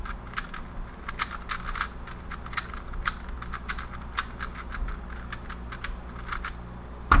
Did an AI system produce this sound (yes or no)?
no